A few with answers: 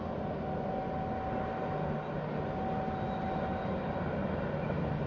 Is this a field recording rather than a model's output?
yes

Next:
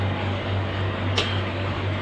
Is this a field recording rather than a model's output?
no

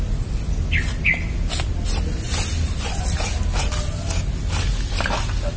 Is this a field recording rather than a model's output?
yes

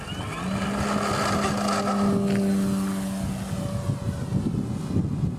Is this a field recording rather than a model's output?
yes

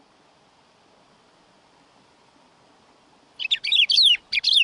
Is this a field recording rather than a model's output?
yes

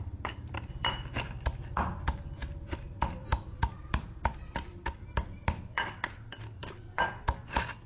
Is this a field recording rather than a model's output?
no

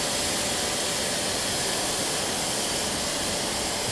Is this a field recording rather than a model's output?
yes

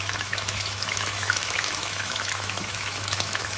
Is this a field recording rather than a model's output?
no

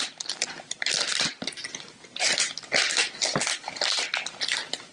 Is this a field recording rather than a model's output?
yes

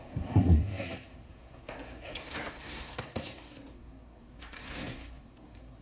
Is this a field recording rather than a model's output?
no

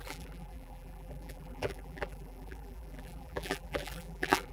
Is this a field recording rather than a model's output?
no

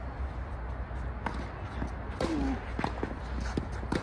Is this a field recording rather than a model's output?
yes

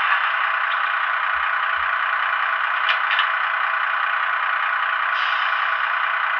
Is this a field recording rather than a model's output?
yes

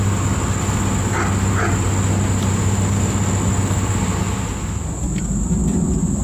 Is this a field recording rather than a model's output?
yes